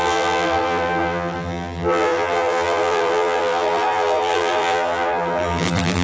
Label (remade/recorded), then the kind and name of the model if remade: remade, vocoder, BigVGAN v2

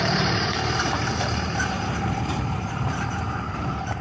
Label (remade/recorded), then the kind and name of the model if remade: remade, vocoder, BigVGAN v2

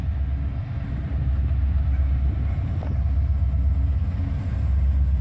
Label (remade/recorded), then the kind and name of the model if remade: recorded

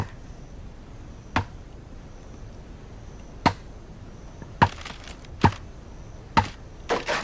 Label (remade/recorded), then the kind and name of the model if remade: recorded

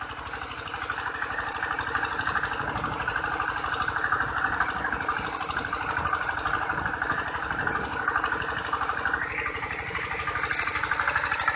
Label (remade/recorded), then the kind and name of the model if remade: recorded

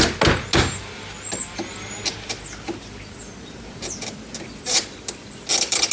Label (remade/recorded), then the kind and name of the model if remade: recorded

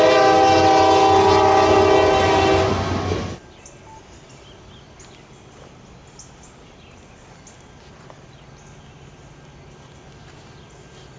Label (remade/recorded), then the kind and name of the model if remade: recorded